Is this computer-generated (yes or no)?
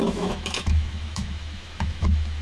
yes